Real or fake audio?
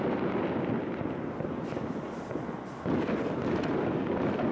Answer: real